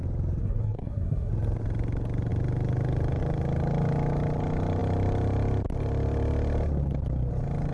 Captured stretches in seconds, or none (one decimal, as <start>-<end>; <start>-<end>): 0.0-0.4; 1.3-7.7